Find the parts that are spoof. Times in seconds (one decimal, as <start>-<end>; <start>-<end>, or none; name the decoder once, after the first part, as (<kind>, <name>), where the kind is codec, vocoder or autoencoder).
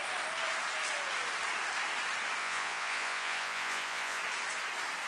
2.4-4.2 (vocoder, Vocos)